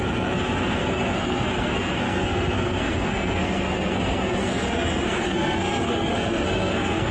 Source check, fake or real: fake